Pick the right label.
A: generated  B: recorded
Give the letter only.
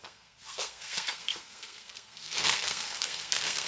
A